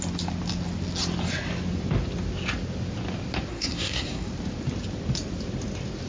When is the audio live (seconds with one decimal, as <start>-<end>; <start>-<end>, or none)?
0.0-3.5; 4.3-6.1